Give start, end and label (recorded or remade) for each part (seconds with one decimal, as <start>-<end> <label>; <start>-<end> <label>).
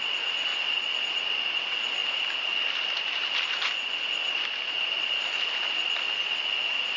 0.0-7.0 recorded